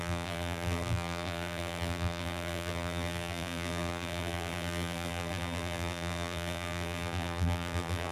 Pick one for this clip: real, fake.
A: fake